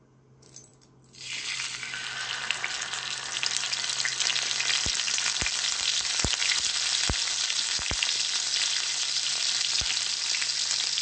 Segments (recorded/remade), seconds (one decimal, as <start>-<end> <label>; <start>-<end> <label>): 0.0-11.0 recorded